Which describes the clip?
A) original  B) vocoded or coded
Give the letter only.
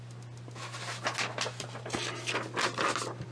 A